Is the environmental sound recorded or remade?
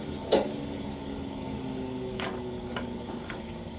remade